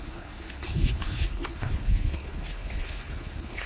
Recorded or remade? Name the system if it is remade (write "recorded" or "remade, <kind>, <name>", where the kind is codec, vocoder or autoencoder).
remade, codec, HILCodec